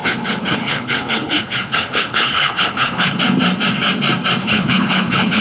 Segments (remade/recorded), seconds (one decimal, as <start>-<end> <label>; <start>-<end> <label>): 0.0-3.2 remade; 3.2-4.4 recorded; 4.4-5.4 remade